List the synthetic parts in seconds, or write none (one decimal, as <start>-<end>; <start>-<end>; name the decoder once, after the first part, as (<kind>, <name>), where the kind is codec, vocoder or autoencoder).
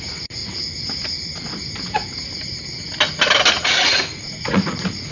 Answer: 0.0-0.4 (vocoder, Vocos); 3.5-5.1